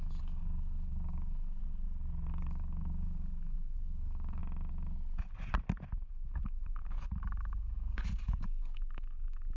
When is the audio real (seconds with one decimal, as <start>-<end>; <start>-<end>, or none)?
1.6-2.3; 4.4-6.1